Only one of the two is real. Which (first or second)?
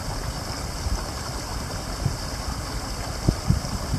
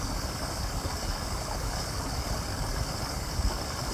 first